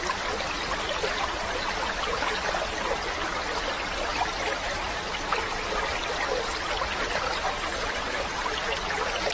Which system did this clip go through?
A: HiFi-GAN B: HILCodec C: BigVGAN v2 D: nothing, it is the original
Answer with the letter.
D